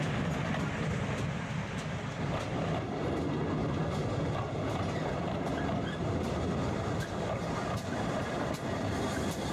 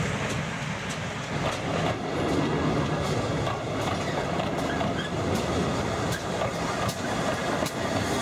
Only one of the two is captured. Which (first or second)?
second